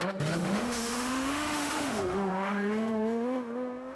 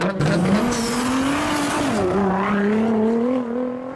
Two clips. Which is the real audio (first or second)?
second